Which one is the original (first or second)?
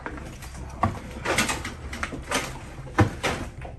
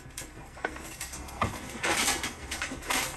first